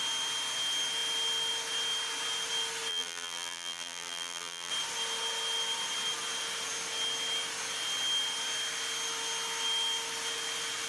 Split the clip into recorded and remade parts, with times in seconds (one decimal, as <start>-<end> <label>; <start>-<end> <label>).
0.0-2.9 recorded; 2.9-4.7 remade; 4.7-10.9 recorded